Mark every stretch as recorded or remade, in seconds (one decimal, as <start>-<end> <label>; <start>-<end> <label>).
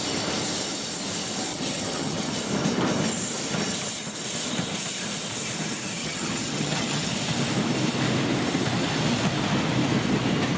0.0-1.5 recorded; 1.5-2.3 remade; 2.3-6.0 recorded; 6.0-7.1 remade; 7.1-10.6 recorded